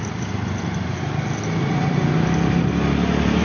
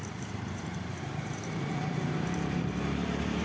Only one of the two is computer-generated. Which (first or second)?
second